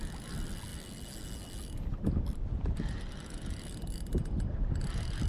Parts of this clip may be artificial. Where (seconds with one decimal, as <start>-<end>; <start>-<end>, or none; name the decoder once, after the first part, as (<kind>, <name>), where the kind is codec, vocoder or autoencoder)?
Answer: none